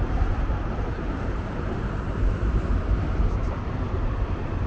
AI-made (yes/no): yes